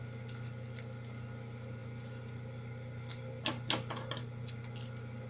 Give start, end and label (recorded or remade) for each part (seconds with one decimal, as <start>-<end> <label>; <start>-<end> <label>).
0.0-5.3 recorded